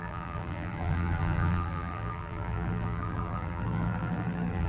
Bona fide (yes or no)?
no